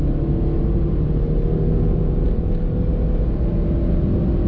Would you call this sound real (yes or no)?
yes